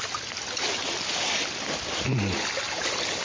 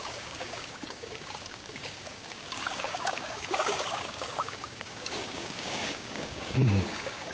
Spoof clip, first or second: second